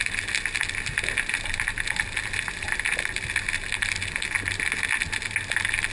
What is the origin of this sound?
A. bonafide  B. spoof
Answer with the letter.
A